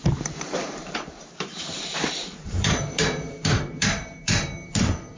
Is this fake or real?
fake